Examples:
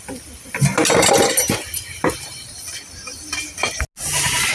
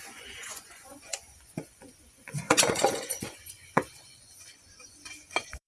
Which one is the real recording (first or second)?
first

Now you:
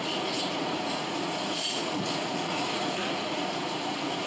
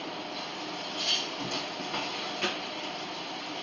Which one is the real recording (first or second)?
second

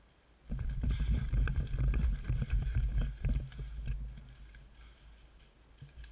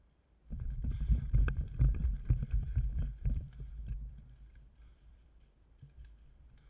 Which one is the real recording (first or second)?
first